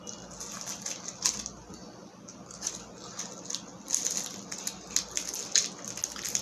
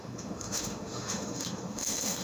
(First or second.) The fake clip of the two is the second